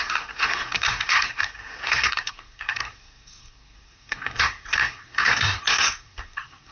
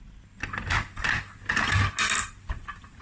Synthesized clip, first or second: first